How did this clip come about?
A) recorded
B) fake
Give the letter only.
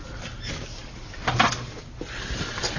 A